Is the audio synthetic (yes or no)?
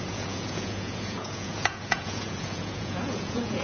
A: yes